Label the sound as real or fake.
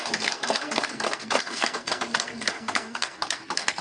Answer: fake